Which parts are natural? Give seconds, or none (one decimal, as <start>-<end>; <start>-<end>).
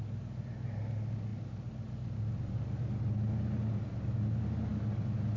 0.0-5.4